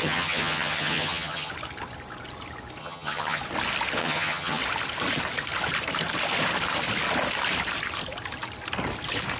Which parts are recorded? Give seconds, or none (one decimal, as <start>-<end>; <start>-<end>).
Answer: 1.5-2.8; 3.4-4.0; 4.6-9.4